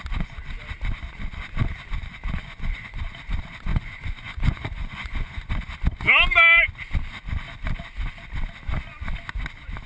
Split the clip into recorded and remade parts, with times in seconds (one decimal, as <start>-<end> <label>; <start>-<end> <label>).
0.0-2.4 recorded; 2.4-3.0 remade; 3.0-3.7 recorded; 3.7-5.5 remade; 5.5-9.9 recorded